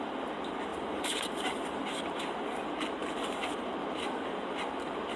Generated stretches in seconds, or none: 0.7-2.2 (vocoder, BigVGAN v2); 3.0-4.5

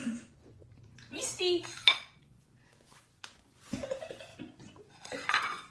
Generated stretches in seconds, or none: 0.0-5.7 (vocoder, Vocos)

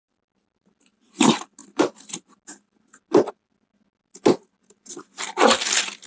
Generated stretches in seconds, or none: none

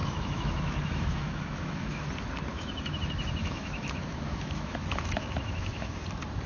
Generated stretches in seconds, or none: 0.0-2.1 (autoencoder, DAC-VAE); 2.5-3.0; 3.4-6.0

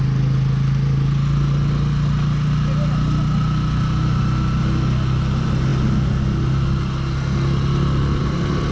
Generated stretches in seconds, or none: none

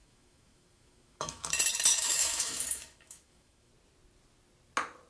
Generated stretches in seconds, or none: 0.0-1.5 (autoencoder, DAC-VAE); 1.9-3.7

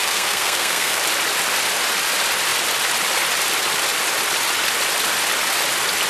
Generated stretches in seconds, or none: 0.0-1.0 (codec, SNAC)